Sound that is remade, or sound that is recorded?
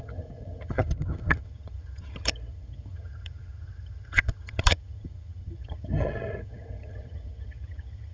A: remade